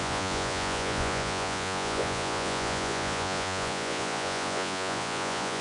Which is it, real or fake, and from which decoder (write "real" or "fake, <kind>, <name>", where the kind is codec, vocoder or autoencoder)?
fake, vocoder, Vocos